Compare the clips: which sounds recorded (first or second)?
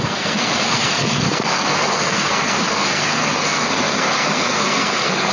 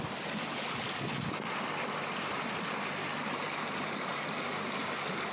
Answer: second